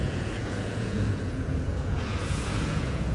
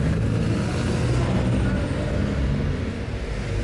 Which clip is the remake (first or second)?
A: first